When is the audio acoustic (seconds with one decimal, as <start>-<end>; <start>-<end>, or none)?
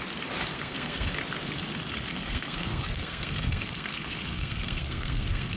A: 0.0-0.5; 1.1-2.1